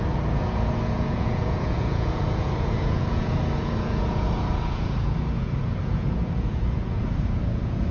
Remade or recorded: remade